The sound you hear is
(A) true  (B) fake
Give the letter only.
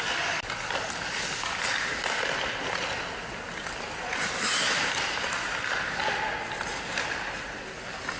A